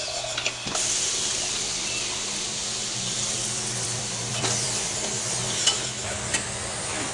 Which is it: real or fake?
fake